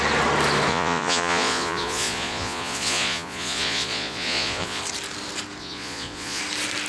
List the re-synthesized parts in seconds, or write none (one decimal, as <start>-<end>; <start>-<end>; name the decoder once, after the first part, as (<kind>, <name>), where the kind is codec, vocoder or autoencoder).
0.7-4.8 (vocoder, Vocos); 5.6-6.4